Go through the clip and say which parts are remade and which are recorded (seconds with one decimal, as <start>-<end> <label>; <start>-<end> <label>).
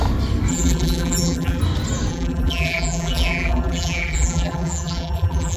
0.0-0.5 recorded; 0.5-1.6 remade; 1.6-2.1 recorded; 2.1-5.6 remade